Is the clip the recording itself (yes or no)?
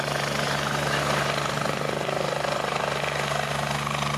yes